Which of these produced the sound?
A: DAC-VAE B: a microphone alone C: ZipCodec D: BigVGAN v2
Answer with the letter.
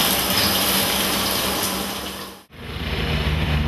D